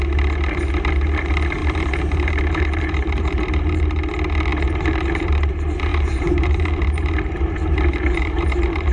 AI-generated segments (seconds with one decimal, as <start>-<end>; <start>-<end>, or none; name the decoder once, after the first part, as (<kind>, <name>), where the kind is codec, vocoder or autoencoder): 1.6-4.0 (vocoder, BigVGAN v2); 4.5-5.5; 5.9-8.9